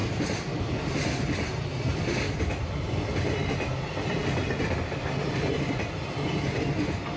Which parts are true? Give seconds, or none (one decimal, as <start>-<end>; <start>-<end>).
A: 0.6-7.2